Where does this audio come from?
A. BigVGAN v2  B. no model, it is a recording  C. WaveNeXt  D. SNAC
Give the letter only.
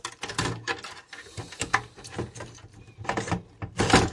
B